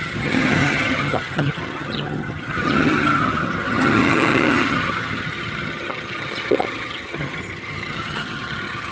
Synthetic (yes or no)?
yes